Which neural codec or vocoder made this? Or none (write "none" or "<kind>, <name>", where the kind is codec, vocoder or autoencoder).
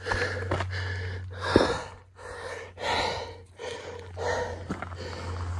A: none